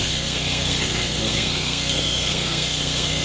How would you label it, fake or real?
fake